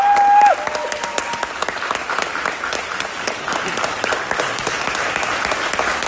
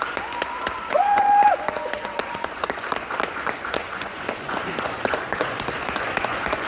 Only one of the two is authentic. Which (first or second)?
first